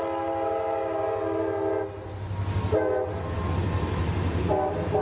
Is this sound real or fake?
real